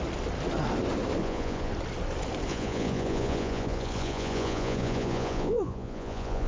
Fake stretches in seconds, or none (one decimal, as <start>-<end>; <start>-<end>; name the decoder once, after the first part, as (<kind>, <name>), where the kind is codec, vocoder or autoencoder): 1.2-1.7 (vocoder, Vocos); 2.5-6.5

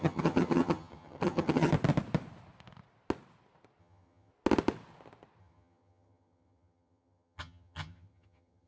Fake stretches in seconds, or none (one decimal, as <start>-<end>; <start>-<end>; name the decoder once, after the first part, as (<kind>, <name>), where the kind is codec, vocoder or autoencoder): 0.0-1.7 (vocoder, HiFi-GAN); 3.8-4.3; 5.4-8.7

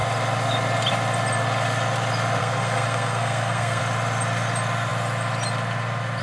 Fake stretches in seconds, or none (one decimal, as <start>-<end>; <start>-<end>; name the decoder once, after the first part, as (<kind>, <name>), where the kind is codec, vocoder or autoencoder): 2.4-3.8 (codec, SNAC)

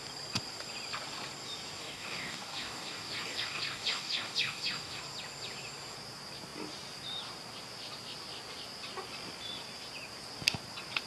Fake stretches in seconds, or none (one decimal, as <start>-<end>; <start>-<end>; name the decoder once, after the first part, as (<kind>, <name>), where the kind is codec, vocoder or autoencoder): 1.8-5.0 (codec, DAC)

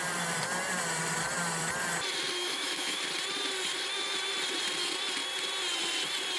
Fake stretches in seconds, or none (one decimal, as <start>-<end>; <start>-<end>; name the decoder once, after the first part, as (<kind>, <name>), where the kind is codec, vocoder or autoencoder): 2.4-3.0 (autoencoder, DAC-VAE)

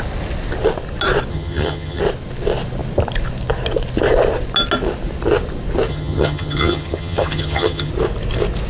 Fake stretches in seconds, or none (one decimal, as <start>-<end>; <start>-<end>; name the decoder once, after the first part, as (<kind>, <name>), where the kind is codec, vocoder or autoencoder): 1.3-2.0 (vocoder, HiFi-GAN); 5.9-7.9